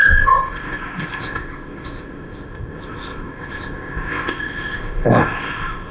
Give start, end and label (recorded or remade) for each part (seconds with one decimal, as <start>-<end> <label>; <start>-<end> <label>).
0.0-5.9 remade